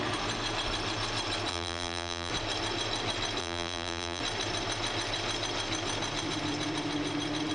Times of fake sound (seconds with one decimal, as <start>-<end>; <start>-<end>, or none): 1.5-2.3; 3.4-4.2